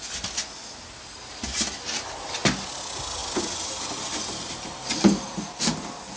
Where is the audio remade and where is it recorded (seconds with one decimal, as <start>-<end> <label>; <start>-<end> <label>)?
0.0-6.2 recorded